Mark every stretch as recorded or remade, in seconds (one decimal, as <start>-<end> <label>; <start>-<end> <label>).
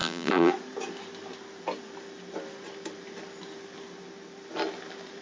0.0-0.5 remade; 0.5-5.2 recorded